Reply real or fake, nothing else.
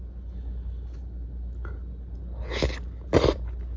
real